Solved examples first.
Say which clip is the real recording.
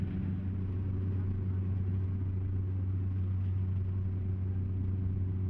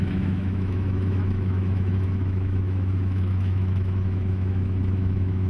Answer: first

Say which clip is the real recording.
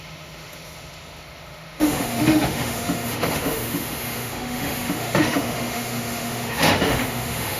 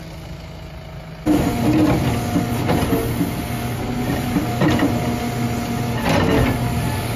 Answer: second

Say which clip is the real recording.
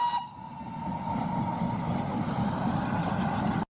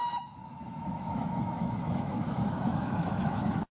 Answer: first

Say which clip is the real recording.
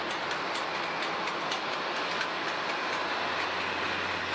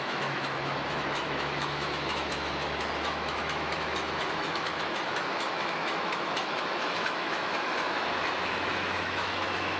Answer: first